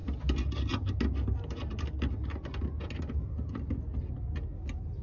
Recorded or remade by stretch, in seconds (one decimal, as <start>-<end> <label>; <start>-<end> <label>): 0.0-5.0 recorded